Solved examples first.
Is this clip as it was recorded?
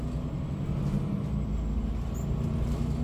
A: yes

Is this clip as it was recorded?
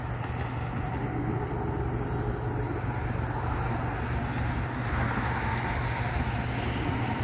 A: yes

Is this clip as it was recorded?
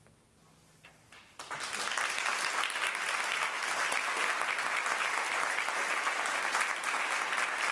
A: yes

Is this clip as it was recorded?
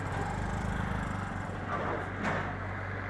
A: yes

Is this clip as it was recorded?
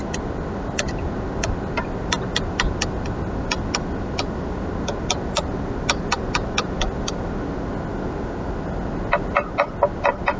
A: yes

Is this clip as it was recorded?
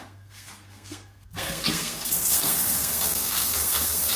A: no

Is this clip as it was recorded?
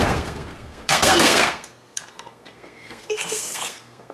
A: no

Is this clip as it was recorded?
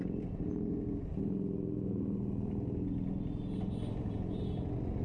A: yes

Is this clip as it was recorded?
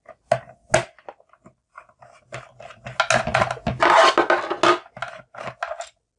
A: yes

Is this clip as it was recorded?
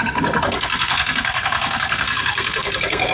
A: no